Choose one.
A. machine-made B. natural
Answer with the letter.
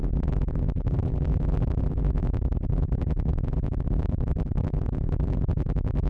A